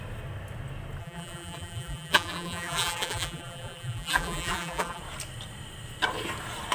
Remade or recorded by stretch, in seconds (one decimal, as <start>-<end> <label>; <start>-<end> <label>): 0.0-1.0 recorded; 1.0-5.0 remade; 5.0-6.7 recorded